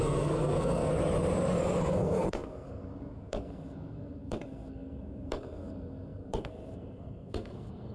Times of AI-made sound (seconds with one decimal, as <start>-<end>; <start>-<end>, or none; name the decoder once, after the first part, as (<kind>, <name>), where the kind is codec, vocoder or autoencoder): 0.0-0.9 (codec, SNAC); 1.9-7.9